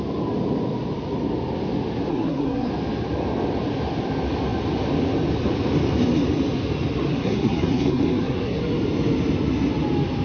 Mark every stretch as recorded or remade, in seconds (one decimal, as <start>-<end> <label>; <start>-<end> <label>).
0.0-2.1 recorded; 2.1-2.7 remade; 2.7-7.1 recorded; 7.1-8.6 remade; 8.6-10.2 recorded